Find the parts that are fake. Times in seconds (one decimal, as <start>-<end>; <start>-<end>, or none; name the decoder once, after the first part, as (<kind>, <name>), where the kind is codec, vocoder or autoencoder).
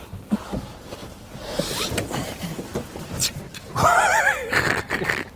1.0-4.2 (vocoder, BigVGAN v2)